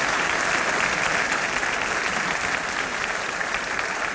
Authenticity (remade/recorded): recorded